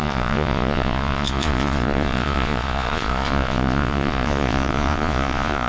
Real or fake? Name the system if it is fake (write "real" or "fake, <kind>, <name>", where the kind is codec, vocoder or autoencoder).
fake, vocoder, Vocos